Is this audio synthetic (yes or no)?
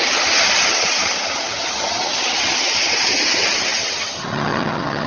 yes